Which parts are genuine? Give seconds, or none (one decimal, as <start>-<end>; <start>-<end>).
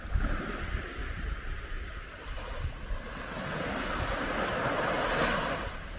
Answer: 0.0-6.0